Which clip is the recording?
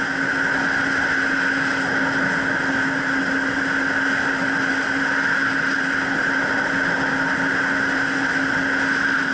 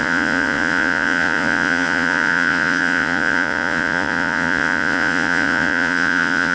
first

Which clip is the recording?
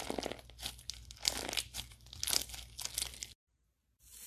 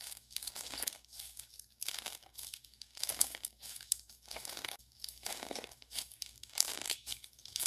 first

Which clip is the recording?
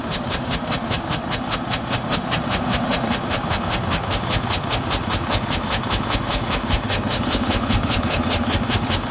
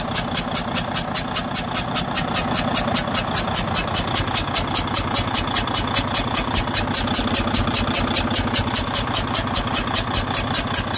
second